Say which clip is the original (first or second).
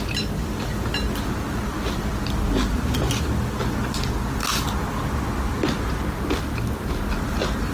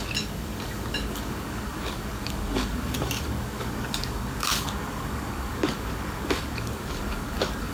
first